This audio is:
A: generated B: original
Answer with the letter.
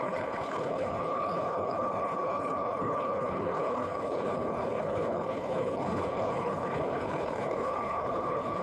A